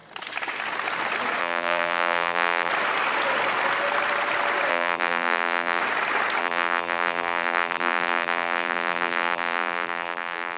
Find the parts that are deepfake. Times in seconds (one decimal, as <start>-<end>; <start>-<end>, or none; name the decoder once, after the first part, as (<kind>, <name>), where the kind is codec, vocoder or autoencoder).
1.4-2.7 (vocoder, BigVGAN v2); 4.7-5.8; 6.4-10.6